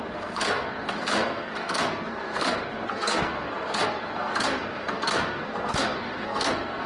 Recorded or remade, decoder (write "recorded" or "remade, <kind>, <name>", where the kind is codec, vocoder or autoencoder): remade, codec, SNAC